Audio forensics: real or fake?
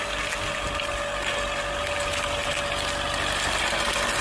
real